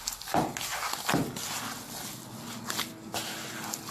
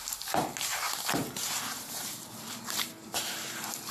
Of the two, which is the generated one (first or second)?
second